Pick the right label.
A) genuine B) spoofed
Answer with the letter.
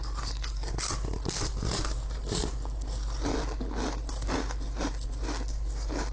A